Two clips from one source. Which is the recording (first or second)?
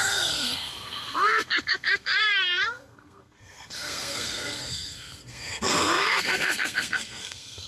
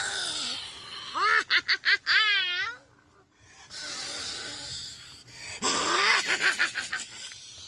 second